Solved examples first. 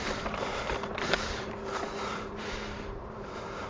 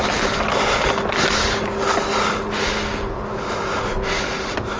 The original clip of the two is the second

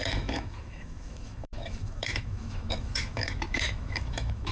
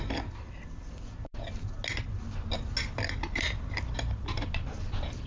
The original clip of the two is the second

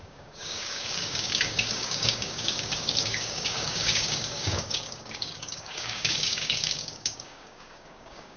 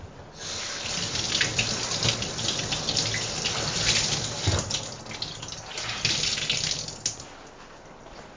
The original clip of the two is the second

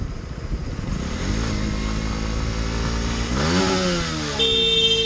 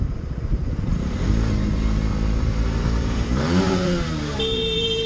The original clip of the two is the first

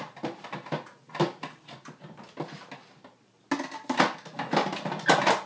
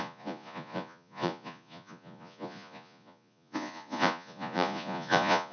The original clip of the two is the first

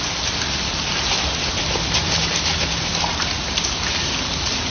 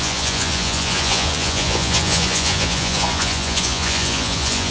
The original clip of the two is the first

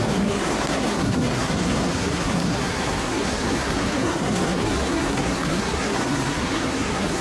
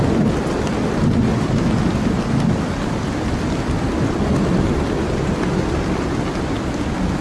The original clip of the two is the second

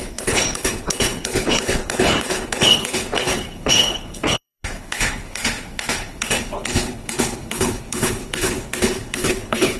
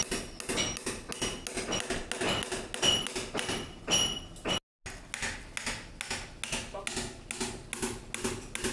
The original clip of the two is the second